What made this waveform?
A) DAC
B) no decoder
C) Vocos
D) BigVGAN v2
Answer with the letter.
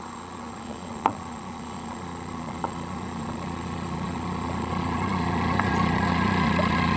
C